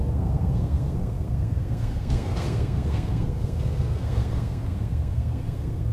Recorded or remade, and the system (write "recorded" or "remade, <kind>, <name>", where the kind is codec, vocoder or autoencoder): remade, codec, SNAC